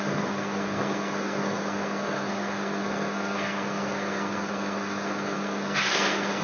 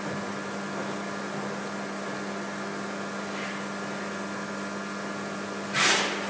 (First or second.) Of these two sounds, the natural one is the second